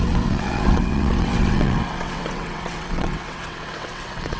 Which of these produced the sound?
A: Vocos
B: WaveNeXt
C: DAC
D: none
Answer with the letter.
B